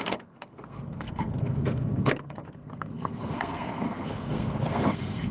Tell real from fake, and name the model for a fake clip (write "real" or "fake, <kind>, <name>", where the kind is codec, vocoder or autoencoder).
fake, codec, SNAC